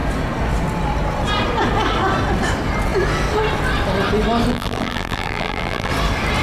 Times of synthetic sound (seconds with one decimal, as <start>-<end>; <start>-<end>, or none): 4.5-5.9